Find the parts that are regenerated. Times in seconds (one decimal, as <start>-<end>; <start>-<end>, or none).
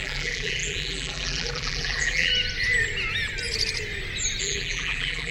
0.0-2.3; 4.4-5.3